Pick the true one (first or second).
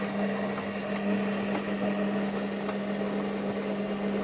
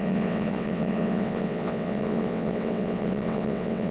first